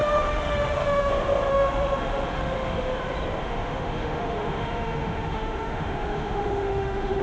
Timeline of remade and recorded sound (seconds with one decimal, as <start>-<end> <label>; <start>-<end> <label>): 0.0-1.1 remade; 1.1-1.5 recorded; 1.5-3.0 remade; 3.0-3.4 recorded; 3.4-7.2 remade